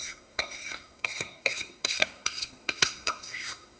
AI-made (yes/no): yes